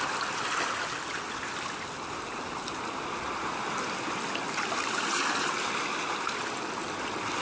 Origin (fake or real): real